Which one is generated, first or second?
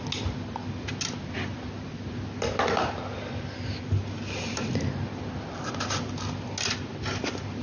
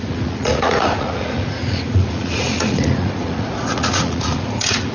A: second